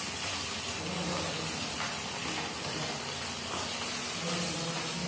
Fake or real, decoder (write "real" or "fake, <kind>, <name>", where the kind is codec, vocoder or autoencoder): real